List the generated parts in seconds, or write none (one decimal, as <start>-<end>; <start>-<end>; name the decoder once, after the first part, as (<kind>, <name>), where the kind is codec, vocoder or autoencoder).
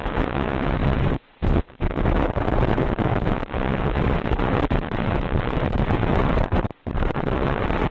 0.0-7.9 (vocoder, WaveNeXt)